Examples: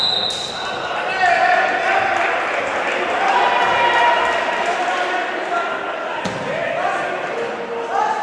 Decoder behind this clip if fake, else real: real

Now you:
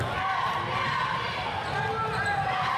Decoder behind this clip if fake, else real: real